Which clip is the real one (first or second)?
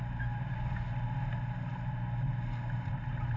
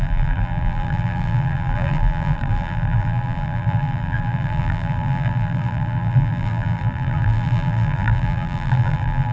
first